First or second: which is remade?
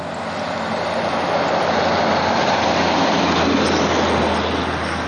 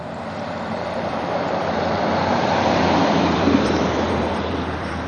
second